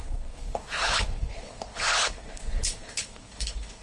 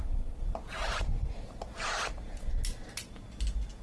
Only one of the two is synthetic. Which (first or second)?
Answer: first